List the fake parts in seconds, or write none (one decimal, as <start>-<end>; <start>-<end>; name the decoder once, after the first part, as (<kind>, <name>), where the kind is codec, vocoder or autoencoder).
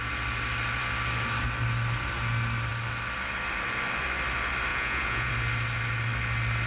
4.7-5.3 (vocoder, Vocos)